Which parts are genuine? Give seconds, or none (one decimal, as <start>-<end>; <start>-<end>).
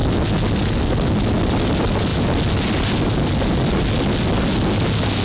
0.0-5.2